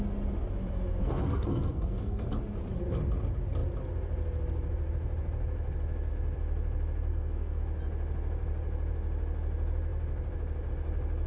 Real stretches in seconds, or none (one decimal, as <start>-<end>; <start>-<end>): 0.0-1.0; 2.3-7.1; 7.6-11.3